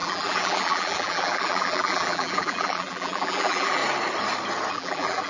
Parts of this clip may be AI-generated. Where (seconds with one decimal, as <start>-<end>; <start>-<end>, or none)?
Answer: 0.0-3.8; 4.7-5.3